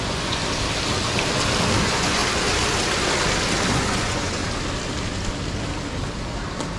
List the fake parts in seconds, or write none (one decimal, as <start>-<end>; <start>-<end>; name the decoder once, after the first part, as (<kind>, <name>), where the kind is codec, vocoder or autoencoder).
0.0-0.4 (vocoder, Vocos); 1.8-2.2; 3.7-4.4